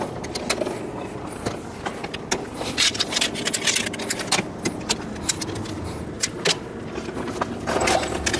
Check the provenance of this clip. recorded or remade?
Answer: recorded